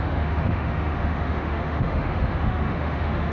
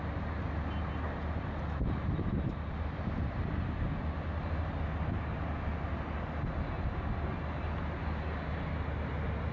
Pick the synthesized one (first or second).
first